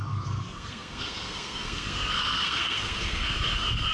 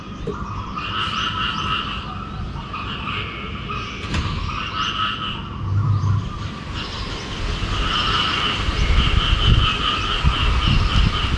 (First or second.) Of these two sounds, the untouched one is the second